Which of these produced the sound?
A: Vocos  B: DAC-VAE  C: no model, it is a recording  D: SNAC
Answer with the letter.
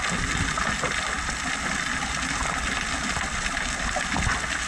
C